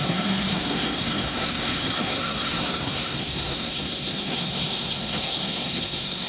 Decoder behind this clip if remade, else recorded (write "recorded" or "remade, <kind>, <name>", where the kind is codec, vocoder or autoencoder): remade, codec, SNAC